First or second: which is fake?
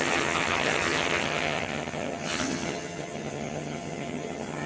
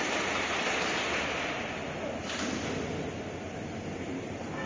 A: first